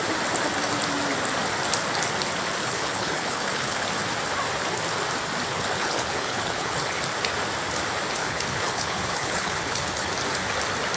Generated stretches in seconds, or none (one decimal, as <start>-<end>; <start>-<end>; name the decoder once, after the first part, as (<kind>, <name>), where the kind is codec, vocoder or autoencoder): 2.6-3.9 (codec, HILCodec); 5.5-7.0; 8.2-10.1

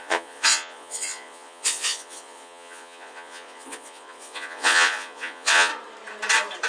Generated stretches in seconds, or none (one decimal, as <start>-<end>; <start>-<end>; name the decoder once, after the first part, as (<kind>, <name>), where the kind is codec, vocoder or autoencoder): 0.0-5.7 (vocoder, Vocos)

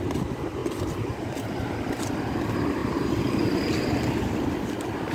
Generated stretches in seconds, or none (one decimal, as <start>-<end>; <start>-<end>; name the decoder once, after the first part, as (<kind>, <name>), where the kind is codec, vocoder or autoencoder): none

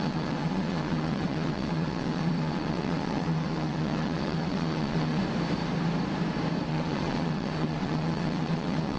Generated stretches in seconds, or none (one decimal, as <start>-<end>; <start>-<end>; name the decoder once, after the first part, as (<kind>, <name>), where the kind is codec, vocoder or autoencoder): 0.0-5.2 (vocoder, WaveNeXt); 6.7-9.0